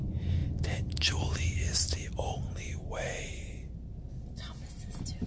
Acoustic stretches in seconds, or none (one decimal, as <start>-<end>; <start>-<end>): 0.0-5.3